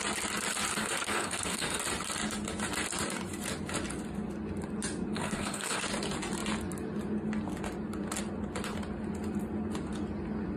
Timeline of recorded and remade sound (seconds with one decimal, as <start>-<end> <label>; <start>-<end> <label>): 0.0-0.7 recorded; 0.7-1.8 remade; 1.8-5.1 recorded; 5.1-5.8 remade; 5.8-10.6 recorded